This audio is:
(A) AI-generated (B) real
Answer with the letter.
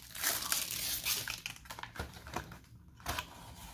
B